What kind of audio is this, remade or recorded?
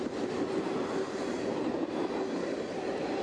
recorded